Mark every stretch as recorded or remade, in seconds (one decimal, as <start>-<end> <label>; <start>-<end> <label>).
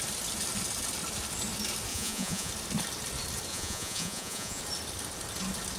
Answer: 0.0-1.9 recorded; 1.9-2.5 remade; 2.5-3.5 recorded; 3.5-4.6 remade; 4.6-5.8 recorded